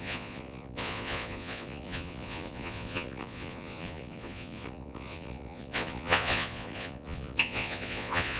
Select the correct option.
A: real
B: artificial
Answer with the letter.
B